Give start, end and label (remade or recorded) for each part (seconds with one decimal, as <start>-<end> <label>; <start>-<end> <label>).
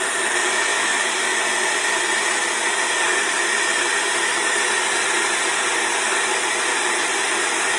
0.0-0.7 recorded; 0.7-1.2 remade; 1.2-7.8 recorded